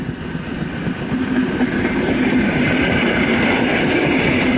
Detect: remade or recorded recorded